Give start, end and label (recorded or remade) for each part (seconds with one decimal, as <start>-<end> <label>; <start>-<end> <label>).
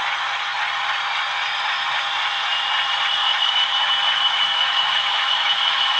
0.0-3.2 recorded; 3.2-3.9 remade; 3.9-4.5 recorded; 4.5-6.0 remade